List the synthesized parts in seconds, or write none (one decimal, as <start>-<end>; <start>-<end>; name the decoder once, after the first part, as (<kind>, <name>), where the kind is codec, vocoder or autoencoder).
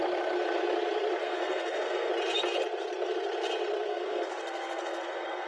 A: 1.2-2.1 (codec, SNAC); 3.9-5.5